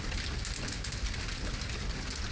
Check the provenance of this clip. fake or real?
real